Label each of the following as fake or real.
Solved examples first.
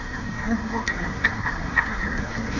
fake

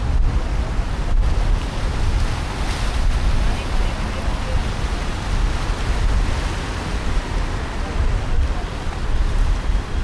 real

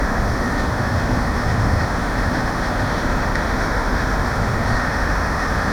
fake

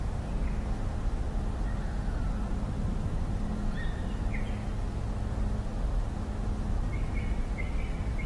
real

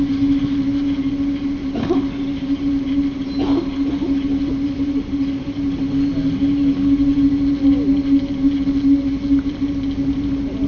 real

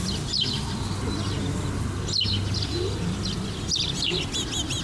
real